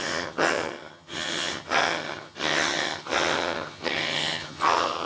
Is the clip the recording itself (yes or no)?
no